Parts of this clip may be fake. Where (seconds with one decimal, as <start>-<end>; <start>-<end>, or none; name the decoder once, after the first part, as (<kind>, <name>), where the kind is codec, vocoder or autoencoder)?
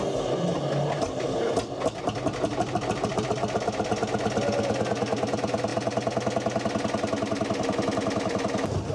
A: none